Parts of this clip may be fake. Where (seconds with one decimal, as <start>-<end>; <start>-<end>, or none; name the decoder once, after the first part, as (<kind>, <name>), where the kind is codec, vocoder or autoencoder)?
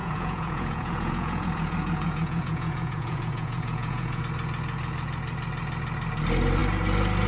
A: 0.0-4.2 (vocoder, Vocos)